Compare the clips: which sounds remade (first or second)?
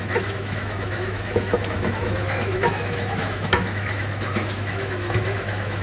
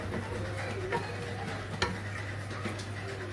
first